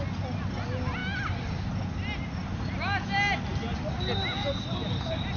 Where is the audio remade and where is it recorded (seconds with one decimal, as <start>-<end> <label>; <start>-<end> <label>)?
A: 0.0-5.4 recorded